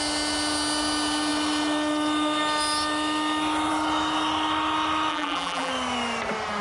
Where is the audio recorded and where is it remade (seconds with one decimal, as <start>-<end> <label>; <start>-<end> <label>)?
0.0-5.1 recorded; 5.1-5.7 remade; 5.7-6.6 recorded

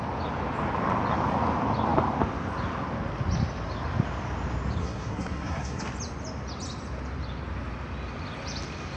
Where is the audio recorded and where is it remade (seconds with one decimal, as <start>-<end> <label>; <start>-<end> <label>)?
0.0-4.8 recorded; 4.8-5.8 remade; 5.8-9.0 recorded

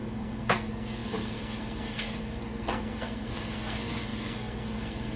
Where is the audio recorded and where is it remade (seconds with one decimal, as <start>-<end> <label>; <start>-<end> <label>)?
0.0-5.2 remade

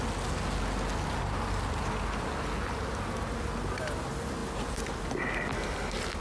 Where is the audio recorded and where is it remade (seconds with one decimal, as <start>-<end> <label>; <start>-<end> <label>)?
0.0-6.2 recorded

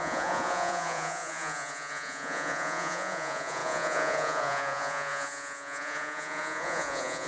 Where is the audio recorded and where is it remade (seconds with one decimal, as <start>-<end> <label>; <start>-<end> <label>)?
0.0-7.3 remade

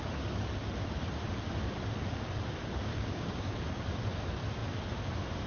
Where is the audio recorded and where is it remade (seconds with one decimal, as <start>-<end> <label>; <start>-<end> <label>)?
0.0-2.9 recorded; 2.9-3.5 remade; 3.5-5.5 recorded